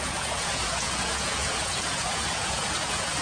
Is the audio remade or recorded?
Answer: remade